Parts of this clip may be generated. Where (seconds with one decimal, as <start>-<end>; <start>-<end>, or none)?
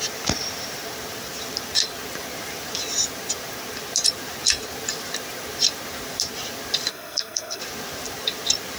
6.9-7.6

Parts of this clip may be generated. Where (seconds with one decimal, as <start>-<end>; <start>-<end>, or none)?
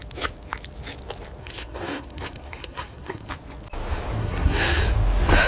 1.4-3.3; 4.2-4.8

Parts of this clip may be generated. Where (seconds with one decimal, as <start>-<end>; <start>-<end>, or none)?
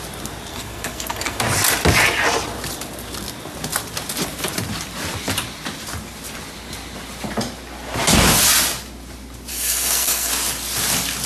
0.5-1.4; 9.5-10.3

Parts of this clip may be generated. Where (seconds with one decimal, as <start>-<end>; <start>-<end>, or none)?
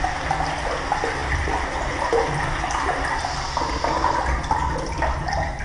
none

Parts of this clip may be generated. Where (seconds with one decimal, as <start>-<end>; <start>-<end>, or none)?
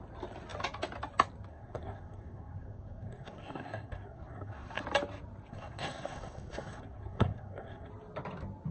1.5-4.8; 5.5-7.9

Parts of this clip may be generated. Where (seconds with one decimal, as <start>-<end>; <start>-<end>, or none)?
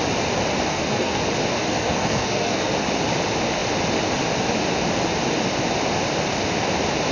0.7-1.2; 1.7-2.7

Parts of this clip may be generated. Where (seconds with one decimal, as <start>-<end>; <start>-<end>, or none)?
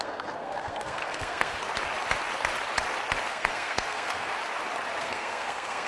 0.0-1.7; 3.3-4.3; 5.0-5.9